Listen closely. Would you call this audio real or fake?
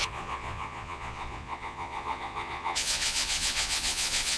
fake